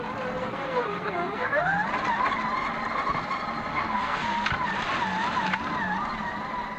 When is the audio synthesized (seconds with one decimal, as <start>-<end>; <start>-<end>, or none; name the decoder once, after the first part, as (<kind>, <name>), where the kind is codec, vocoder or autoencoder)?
0.4-1.6 (codec, SNAC); 3.7-4.5